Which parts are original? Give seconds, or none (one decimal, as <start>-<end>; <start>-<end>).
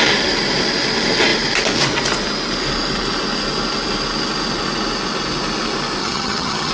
0.0-6.0